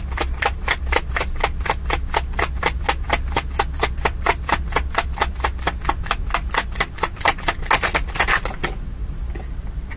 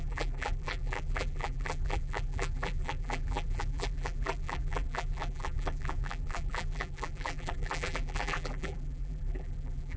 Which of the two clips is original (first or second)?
first